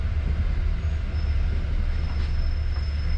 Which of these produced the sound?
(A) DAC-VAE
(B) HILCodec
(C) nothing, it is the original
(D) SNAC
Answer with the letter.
C